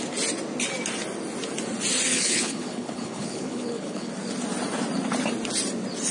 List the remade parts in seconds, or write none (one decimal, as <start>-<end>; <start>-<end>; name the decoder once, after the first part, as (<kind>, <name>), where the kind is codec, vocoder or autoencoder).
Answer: 2.1-4.1 (codec, HILCodec)